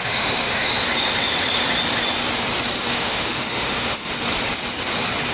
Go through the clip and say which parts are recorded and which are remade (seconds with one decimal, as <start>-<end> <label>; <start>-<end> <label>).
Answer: 0.0-0.7 remade; 0.7-2.8 recorded; 2.8-4.1 remade; 4.1-5.3 recorded